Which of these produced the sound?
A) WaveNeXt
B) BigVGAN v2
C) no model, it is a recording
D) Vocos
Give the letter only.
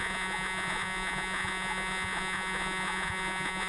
D